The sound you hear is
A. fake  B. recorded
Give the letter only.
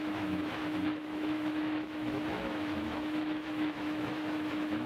A